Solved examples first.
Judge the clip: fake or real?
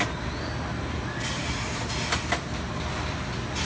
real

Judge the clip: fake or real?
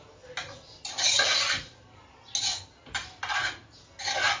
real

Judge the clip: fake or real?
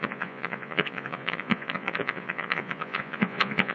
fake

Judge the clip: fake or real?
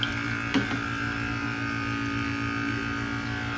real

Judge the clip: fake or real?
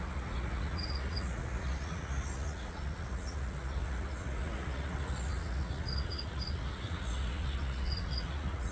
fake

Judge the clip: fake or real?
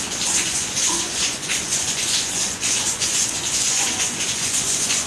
fake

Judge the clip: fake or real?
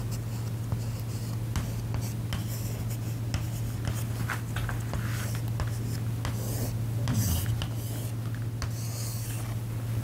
real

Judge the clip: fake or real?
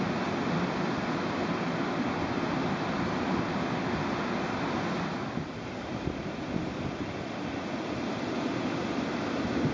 real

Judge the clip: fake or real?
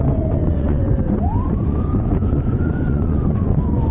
fake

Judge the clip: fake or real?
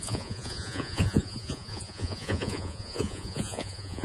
fake